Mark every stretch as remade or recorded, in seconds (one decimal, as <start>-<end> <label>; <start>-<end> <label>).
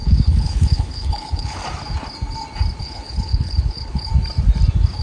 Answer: 0.0-1.6 remade; 1.6-2.8 recorded; 2.8-4.1 remade; 4.1-5.0 recorded